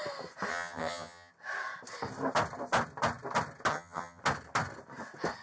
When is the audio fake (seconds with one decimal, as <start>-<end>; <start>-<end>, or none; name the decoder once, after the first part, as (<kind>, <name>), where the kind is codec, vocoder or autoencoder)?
0.5-1.3 (vocoder, HiFi-GAN); 3.7-4.2